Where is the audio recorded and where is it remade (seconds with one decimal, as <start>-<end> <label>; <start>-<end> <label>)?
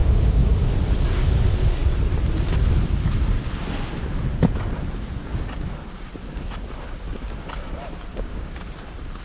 0.0-0.5 remade; 0.5-8.1 recorded; 8.1-8.6 remade; 8.6-9.2 recorded